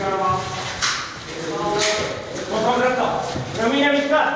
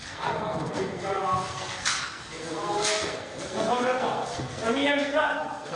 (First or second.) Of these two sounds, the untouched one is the first